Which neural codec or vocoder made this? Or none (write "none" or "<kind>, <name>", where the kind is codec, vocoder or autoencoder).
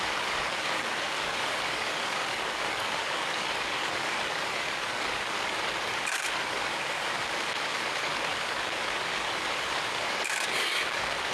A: codec, DAC